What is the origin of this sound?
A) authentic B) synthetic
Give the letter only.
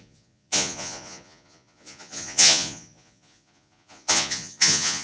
B